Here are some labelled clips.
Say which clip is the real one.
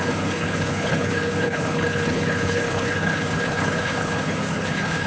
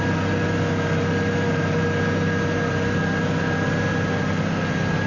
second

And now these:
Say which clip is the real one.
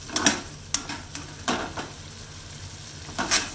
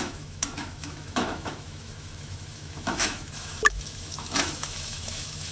first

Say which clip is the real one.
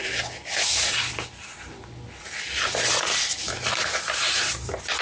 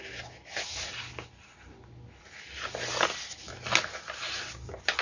second